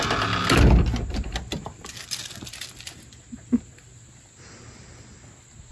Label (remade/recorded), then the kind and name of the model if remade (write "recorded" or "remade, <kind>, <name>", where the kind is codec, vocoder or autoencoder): recorded